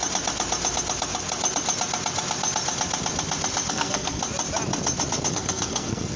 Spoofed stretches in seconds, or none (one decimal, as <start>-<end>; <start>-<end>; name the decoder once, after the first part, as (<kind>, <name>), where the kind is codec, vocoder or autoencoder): 3.7-4.2 (codec, SNAC); 5.3-6.2